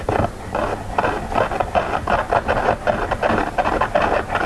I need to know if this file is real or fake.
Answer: real